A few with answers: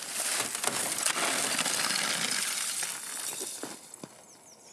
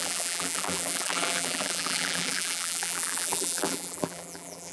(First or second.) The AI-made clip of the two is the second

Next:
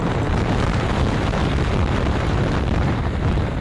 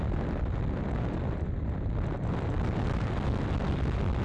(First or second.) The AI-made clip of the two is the first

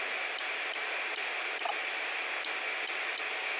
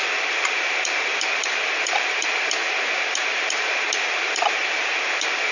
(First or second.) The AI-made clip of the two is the second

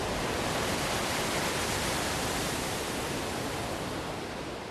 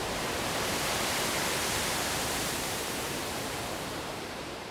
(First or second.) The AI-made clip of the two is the second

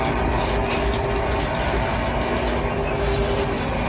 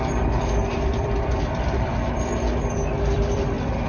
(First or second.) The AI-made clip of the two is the second